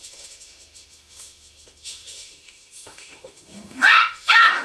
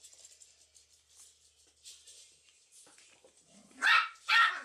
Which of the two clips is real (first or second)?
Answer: second